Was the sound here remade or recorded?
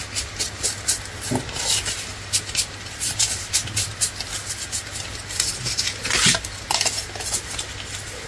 recorded